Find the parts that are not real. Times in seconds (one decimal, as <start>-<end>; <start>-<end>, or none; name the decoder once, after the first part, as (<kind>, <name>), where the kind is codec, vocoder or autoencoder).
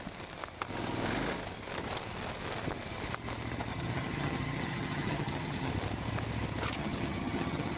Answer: 3.7-5.7 (vocoder, HiFi-GAN); 6.8-7.8